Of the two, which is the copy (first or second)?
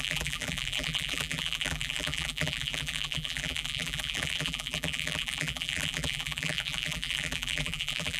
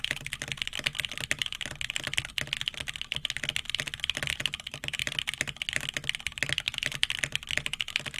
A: first